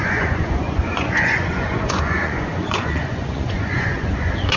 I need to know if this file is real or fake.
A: fake